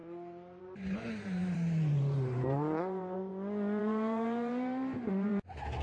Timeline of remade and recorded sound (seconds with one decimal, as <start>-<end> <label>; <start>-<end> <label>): 0.0-0.6 recorded; 0.6-3.3 remade; 3.3-3.8 recorded; 3.8-5.8 remade